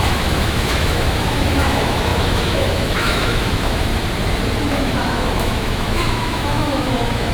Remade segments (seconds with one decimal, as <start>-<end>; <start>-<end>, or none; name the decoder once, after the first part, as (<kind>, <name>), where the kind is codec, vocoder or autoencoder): 0.0-3.9 (autoencoder, DAC-VAE); 4.7-7.3